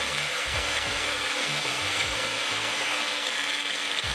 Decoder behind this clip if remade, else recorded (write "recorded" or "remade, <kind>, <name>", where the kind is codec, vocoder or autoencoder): remade, codec, SNAC